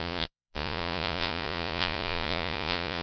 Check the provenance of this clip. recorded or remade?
remade